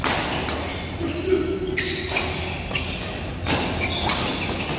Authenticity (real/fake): real